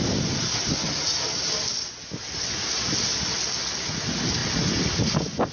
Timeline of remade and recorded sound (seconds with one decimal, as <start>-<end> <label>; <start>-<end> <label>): 0.0-5.5 recorded

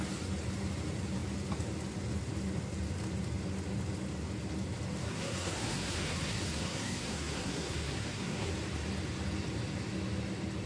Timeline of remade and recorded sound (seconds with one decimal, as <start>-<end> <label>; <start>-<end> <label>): 0.0-5.0 recorded; 5.0-8.5 remade; 8.5-10.7 recorded